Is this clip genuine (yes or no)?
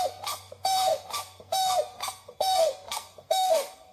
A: no